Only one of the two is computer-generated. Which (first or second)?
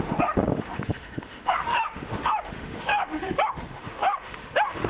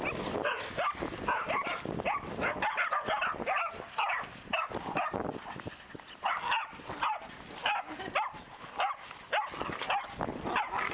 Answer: first